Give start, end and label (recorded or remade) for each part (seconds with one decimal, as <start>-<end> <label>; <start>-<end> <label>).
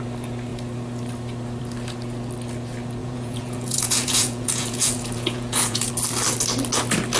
0.0-3.0 recorded; 3.0-5.9 remade; 5.9-7.2 recorded